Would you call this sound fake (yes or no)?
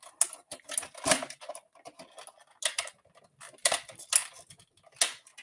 no